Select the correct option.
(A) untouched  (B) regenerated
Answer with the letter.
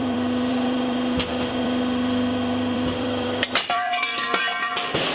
B